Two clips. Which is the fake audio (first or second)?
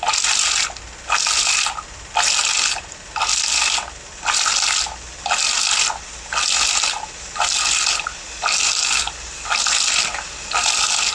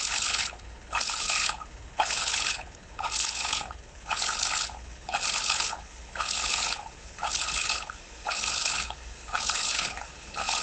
second